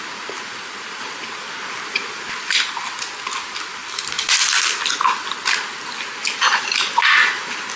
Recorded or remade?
recorded